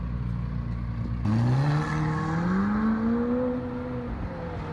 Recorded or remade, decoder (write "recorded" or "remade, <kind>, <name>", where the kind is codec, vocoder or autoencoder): recorded